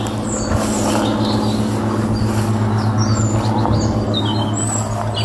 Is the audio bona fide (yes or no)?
yes